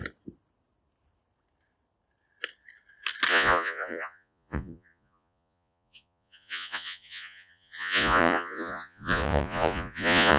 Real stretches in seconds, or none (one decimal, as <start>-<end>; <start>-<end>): 0.0-3.3